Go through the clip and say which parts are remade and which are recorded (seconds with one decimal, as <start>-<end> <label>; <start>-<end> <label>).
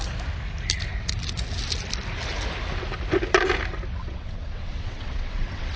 0.0-4.0 recorded; 4.0-5.8 remade